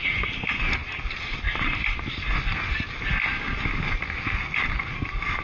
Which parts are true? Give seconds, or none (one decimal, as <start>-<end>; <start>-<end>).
0.0-5.4